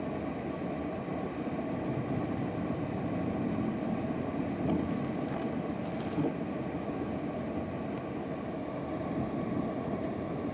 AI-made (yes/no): no